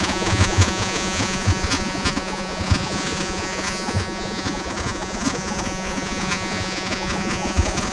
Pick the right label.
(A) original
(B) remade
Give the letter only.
B